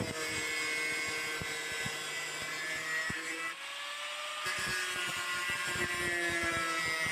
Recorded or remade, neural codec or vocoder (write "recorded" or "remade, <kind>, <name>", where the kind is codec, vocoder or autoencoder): recorded